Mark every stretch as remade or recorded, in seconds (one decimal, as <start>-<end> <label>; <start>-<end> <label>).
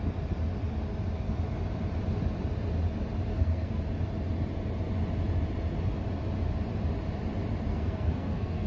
0.0-3.3 recorded; 3.3-3.8 remade; 3.8-7.7 recorded; 7.7-8.7 remade